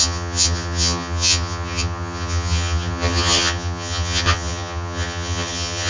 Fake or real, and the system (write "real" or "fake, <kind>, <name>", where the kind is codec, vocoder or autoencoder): fake, vocoder, HiFi-GAN